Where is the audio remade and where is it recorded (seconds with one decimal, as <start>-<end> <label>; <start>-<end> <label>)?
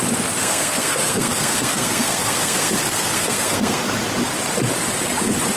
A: 0.0-0.4 recorded; 0.4-3.8 remade; 3.8-5.6 recorded